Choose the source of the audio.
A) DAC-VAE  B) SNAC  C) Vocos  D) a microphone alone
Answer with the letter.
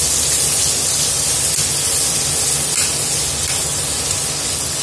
D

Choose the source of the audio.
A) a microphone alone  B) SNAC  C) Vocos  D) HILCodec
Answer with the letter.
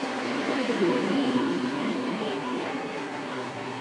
B